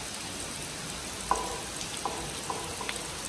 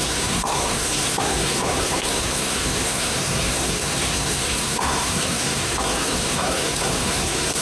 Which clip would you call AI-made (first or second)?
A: second